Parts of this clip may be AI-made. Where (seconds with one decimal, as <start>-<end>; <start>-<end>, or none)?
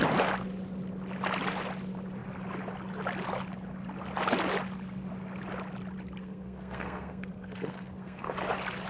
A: 6.2-8.3